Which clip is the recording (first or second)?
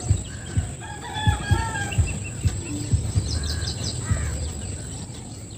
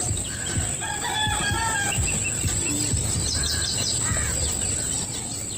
second